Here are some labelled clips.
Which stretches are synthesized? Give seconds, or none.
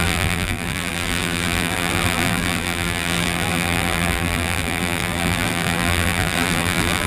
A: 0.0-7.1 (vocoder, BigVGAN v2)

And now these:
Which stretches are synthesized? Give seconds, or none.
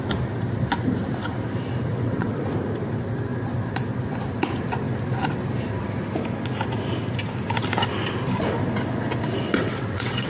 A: 1.9-2.4 (vocoder, WaveNeXt); 9.5-10.3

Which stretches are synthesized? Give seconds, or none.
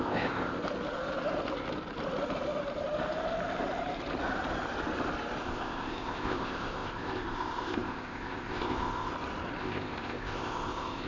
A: 0.0-0.6 (codec, ZipCodec); 5.4-9.1; 9.6-11.1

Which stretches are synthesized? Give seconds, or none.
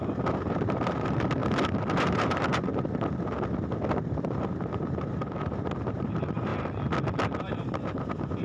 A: 0.0-1.4 (vocoder, BigVGAN v2); 1.9-2.7; 4.3-6.5; 7.4-8.4